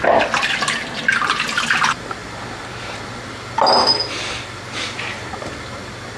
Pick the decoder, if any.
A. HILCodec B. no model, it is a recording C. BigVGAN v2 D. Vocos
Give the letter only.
B